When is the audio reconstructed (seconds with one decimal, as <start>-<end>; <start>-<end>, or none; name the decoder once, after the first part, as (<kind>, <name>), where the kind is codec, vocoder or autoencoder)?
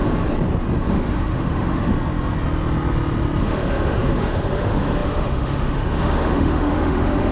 0.9-1.9 (autoencoder, DAC-VAE); 3.4-7.3